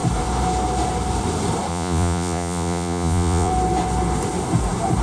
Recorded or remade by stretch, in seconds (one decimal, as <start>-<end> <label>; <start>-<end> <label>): 0.0-1.7 recorded; 1.7-3.5 remade; 3.5-5.0 recorded